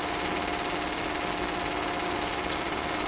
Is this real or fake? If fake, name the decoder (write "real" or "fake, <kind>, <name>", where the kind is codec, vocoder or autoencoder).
real